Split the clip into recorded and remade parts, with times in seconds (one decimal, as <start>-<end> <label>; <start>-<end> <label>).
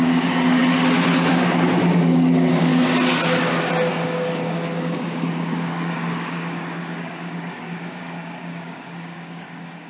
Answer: 0.0-0.6 remade; 0.6-1.3 recorded; 1.3-2.7 remade; 2.7-3.9 recorded; 3.9-9.9 remade